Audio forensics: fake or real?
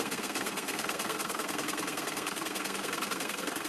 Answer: fake